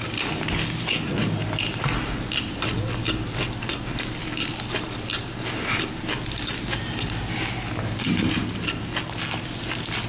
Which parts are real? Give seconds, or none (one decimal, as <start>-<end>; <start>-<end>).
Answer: 0.0-10.1